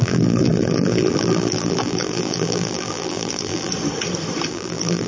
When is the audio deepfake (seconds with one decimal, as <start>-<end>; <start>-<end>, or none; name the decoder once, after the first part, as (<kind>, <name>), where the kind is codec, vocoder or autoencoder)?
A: 0.0-3.7 (vocoder, BigVGAN v2); 4.5-5.1